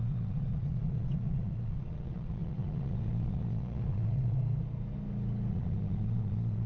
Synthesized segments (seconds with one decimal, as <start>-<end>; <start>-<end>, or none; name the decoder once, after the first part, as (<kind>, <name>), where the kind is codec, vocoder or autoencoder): 0.0-4.4 (vocoder, Vocos); 5.5-6.7